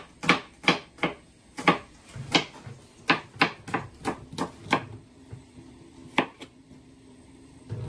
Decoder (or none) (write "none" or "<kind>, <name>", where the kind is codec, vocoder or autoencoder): none